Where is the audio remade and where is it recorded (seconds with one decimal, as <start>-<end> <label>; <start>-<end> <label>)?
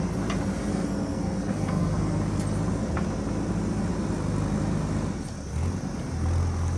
0.0-0.7 recorded; 0.7-2.2 remade; 2.2-6.8 recorded